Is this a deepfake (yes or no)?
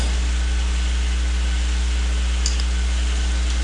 no